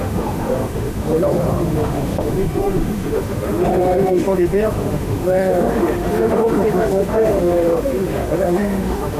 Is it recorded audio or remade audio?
remade